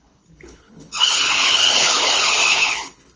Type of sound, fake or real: fake